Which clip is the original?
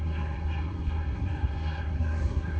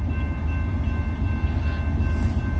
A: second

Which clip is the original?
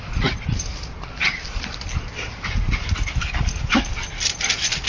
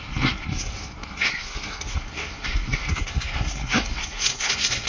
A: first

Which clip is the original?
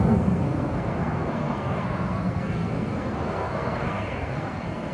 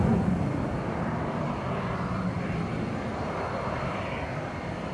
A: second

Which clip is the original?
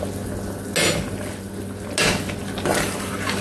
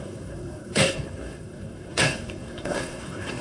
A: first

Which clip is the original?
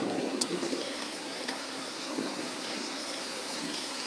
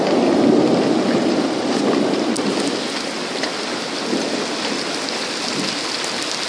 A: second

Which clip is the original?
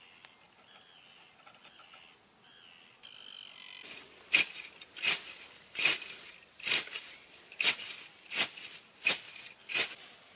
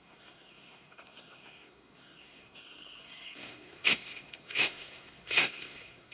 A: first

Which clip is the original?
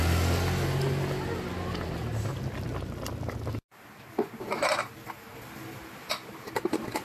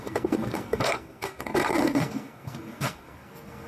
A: first